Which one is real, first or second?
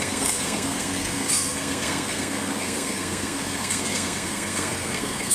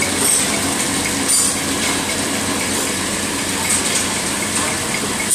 second